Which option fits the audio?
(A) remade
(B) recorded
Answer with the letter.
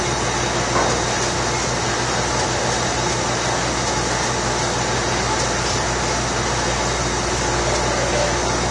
B